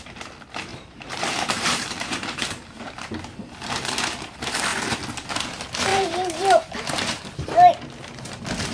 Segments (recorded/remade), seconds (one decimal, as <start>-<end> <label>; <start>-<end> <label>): 0.0-0.7 recorded; 0.7-2.5 remade; 2.5-5.9 recorded; 5.9-7.2 remade; 7.2-8.7 recorded